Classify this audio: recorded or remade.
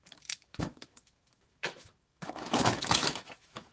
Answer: remade